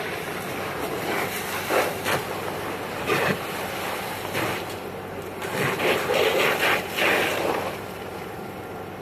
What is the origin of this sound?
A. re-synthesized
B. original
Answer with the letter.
B